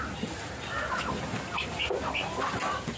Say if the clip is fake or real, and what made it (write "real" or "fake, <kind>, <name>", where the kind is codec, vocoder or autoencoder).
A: real